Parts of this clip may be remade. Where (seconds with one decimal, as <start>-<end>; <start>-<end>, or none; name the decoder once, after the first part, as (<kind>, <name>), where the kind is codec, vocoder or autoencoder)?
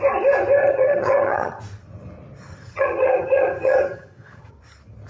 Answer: 0.6-1.6 (vocoder, HiFi-GAN); 2.5-4.5